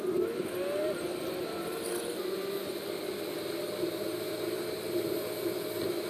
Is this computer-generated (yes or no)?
no